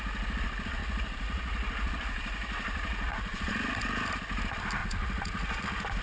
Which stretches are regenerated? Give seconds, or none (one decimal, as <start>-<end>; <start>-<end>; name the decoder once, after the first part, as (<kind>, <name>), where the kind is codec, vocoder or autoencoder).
0.8-3.5 (vocoder, Vocos); 4.8-5.6